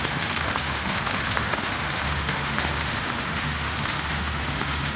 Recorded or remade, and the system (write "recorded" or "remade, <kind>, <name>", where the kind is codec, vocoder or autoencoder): remade, autoencoder, DAC-VAE